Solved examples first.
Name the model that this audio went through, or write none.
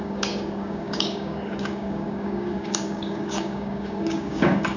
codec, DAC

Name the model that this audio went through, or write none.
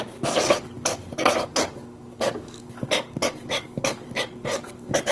codec, DAC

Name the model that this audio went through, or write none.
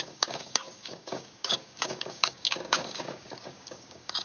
codec, DAC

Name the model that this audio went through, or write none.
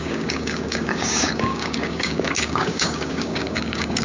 codec, DAC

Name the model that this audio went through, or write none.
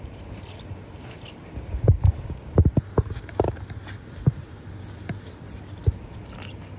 none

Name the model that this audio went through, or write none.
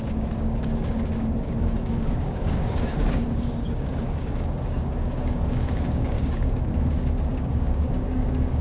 codec, DAC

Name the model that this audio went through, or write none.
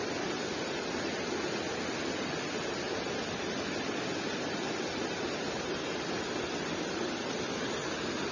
none